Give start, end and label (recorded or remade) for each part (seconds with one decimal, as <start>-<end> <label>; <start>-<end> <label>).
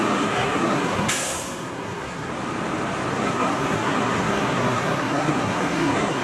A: 0.0-2.3 remade; 2.3-3.1 recorded; 3.1-6.2 remade